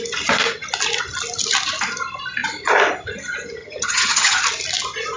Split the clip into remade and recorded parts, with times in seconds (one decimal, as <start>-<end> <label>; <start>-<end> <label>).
0.0-3.6 recorded; 3.6-4.4 remade; 4.4-5.2 recorded